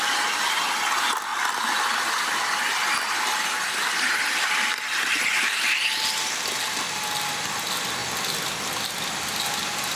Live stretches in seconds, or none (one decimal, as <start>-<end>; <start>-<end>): 0.0-10.0